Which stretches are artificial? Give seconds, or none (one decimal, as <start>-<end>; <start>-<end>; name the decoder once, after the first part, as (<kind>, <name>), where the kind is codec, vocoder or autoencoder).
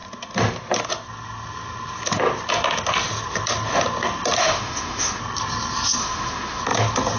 4.4-5.2 (autoencoder, DAC-VAE); 6.0-6.6